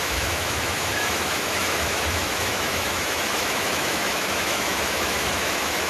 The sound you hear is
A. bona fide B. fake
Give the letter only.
B